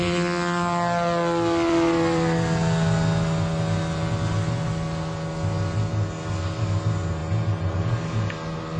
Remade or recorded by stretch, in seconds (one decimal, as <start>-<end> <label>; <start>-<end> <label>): 0.0-8.8 recorded